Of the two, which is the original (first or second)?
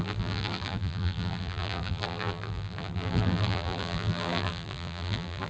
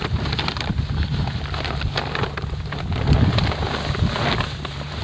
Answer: second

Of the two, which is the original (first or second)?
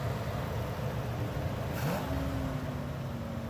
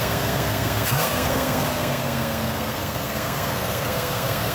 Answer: first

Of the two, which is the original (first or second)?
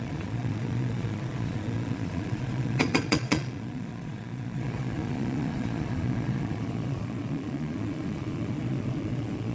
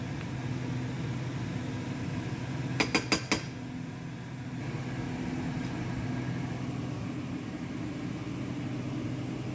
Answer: second